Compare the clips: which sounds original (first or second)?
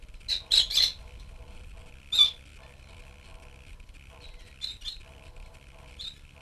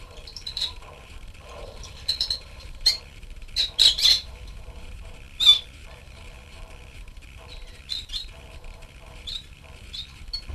first